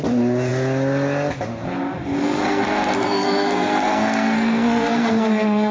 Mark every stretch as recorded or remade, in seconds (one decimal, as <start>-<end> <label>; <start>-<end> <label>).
0.0-2.2 recorded; 2.2-5.7 remade